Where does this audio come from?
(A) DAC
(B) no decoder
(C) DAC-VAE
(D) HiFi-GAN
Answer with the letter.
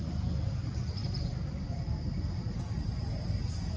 B